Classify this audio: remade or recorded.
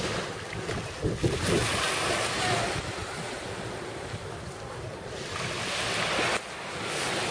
recorded